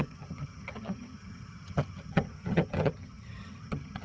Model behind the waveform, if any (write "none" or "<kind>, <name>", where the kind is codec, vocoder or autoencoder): vocoder, HiFi-GAN